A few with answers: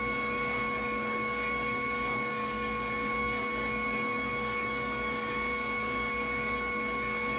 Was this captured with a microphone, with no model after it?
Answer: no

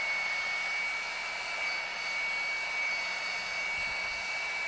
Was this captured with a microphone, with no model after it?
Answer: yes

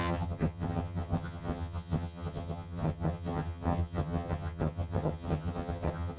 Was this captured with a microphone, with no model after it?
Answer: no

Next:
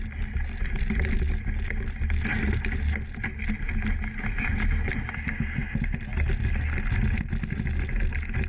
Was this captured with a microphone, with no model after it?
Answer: yes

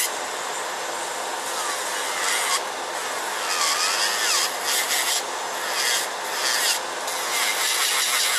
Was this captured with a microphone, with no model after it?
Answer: yes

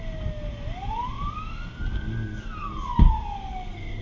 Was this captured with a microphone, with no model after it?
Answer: yes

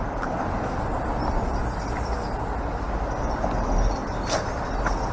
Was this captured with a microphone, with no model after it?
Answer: yes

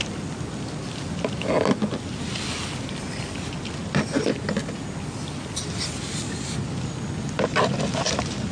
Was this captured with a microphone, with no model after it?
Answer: yes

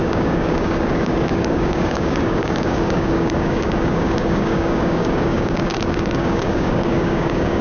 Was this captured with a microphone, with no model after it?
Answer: no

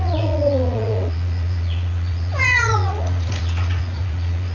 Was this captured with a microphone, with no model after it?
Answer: no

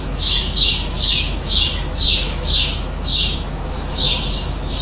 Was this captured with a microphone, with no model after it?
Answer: no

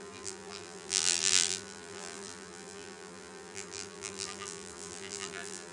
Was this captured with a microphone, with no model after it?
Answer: no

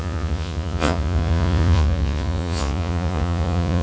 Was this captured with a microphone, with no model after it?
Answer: no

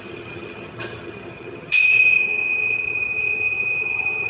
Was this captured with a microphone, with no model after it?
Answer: no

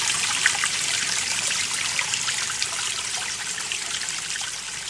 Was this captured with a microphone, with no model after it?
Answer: no